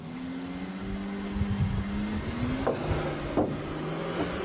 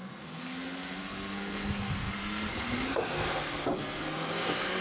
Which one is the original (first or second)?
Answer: first